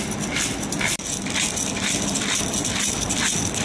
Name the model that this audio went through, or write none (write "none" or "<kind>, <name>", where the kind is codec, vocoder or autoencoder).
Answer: none